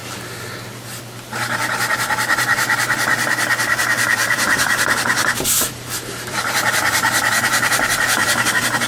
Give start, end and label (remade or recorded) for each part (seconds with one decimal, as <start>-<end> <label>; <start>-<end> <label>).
0.0-4.2 recorded; 4.2-8.5 remade; 8.5-8.9 recorded